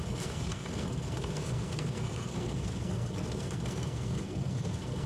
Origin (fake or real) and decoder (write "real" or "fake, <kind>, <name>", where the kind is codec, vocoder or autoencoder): fake, codec, SNAC